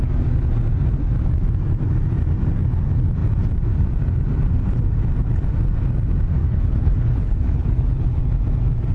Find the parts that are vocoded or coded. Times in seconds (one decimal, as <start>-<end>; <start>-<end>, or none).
6.4-8.2